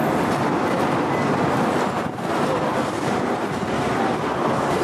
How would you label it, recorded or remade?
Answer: recorded